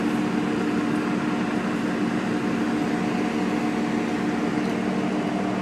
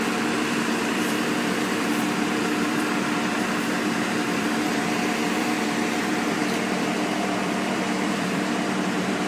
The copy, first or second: second